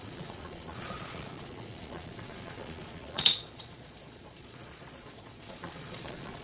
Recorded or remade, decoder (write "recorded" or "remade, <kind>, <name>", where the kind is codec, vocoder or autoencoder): remade, vocoder, Vocos